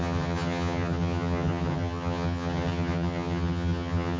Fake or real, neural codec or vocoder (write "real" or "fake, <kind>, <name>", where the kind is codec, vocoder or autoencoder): fake, vocoder, HiFi-GAN